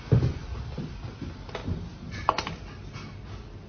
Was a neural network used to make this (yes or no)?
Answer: no